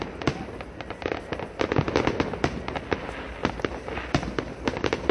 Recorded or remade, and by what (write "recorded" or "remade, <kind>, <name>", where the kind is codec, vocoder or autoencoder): recorded